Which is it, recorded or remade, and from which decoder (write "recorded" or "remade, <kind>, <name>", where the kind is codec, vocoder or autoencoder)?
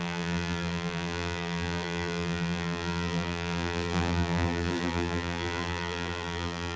remade, vocoder, BigVGAN v2